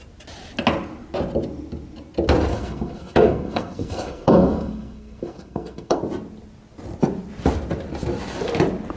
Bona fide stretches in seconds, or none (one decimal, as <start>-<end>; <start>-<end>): 0.0-2.5; 6.0-9.0